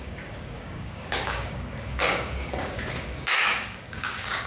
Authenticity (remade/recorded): remade